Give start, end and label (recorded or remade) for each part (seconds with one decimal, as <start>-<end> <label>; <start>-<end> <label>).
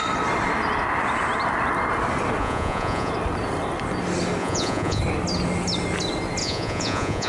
0.0-2.4 recorded; 2.4-3.1 remade; 3.1-4.4 recorded; 4.4-5.0 remade; 5.0-6.4 recorded; 6.4-7.3 remade